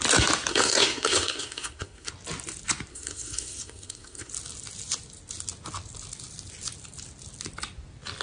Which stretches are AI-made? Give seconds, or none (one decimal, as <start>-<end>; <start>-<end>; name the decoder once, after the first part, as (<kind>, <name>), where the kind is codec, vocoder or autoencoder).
0.5-2.1 (codec, SNAC); 2.9-4.3